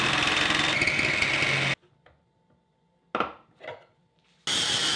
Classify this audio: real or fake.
real